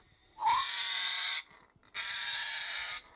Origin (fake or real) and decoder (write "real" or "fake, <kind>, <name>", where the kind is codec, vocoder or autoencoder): real